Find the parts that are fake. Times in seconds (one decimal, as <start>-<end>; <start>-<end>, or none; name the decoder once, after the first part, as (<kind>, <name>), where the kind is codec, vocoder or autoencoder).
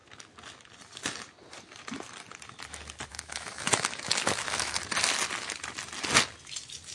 3.1-4.8 (autoencoder, DAC-VAE)